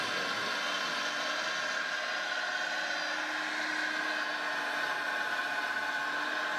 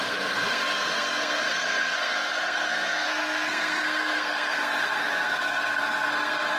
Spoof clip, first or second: second